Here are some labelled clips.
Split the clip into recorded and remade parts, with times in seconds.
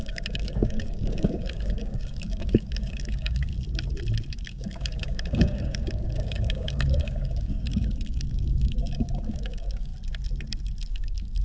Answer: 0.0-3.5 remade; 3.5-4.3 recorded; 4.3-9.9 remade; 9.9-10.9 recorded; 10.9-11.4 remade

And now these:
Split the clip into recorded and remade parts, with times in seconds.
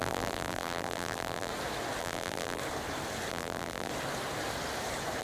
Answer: 0.0-1.5 remade; 1.5-2.0 recorded; 2.0-2.6 remade; 2.6-3.3 recorded; 3.3-3.9 remade; 3.9-5.2 recorded